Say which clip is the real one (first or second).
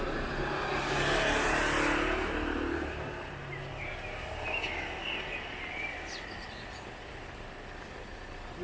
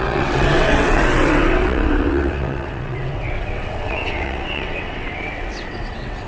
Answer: first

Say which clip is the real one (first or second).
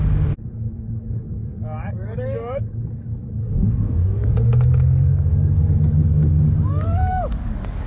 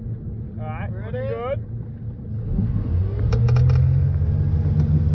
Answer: second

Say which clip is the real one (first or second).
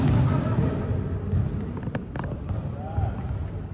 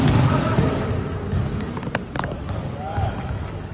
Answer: first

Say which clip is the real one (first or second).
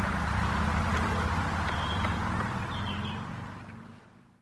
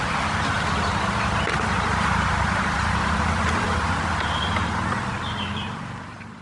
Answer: first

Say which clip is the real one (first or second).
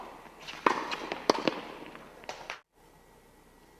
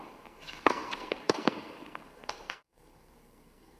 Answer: first